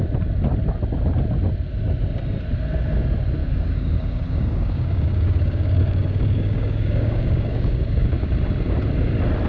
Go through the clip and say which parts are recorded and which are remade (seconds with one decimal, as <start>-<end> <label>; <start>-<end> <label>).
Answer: 0.0-3.4 recorded; 3.4-8.3 remade; 8.3-9.5 recorded

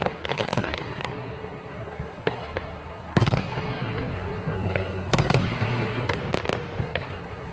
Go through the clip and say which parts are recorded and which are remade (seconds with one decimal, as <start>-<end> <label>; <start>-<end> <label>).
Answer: 0.0-6.2 remade; 6.2-6.8 recorded; 6.8-7.5 remade

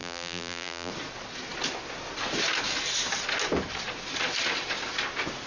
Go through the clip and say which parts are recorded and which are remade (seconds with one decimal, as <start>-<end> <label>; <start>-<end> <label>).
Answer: 0.0-0.9 remade; 0.9-5.5 recorded

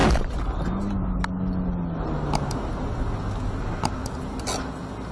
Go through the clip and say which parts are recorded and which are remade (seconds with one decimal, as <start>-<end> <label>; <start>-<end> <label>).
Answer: 0.0-5.1 recorded

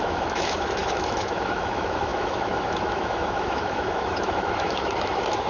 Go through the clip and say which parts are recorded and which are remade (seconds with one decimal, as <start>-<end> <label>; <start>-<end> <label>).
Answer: 0.0-5.5 remade

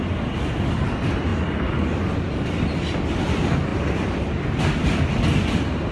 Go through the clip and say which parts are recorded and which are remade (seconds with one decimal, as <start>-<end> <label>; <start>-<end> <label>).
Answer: 0.0-5.9 recorded

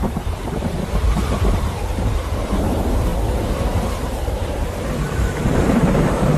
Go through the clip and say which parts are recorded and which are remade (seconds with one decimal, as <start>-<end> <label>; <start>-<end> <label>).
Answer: 0.0-3.1 remade; 3.1-4.0 recorded; 4.0-6.4 remade